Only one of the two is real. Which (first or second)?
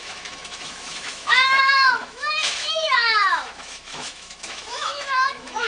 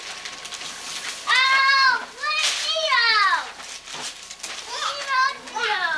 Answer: second